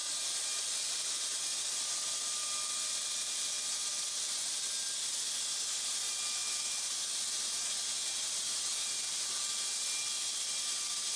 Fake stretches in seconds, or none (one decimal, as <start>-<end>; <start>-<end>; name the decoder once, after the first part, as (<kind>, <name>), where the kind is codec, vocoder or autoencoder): none